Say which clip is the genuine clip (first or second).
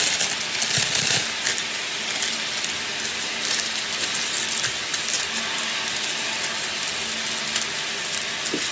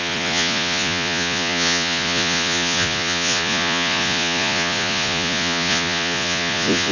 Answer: first